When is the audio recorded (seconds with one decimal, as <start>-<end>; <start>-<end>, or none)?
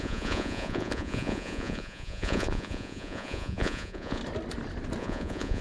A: 4.2-5.0